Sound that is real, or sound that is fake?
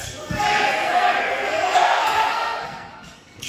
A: fake